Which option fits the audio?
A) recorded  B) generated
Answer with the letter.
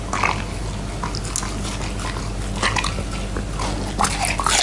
A